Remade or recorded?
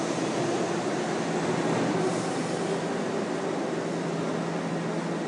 recorded